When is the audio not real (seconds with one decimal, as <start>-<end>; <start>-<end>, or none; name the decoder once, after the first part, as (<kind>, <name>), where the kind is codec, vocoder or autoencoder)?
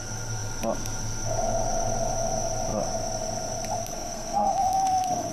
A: 3.8-5.3 (codec, SNAC)